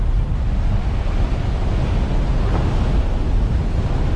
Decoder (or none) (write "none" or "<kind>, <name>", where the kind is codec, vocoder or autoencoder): none